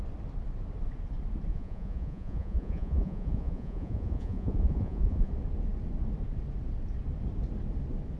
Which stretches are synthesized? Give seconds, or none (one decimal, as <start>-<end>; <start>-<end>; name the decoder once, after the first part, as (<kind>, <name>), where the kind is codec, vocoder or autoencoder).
1.5-5.3 (vocoder, Vocos)